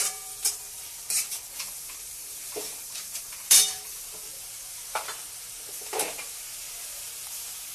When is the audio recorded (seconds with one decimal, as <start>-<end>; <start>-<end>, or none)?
none